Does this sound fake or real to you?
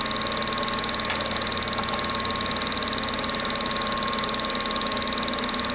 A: real